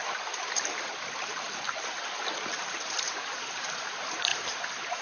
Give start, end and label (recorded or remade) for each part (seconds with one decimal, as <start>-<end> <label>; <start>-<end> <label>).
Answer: 0.0-5.0 recorded